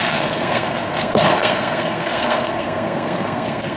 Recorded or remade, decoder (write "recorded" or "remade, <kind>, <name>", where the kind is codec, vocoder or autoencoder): remade, codec, SNAC